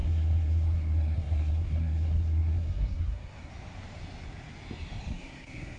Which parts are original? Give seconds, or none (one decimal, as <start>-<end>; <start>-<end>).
3.5-5.1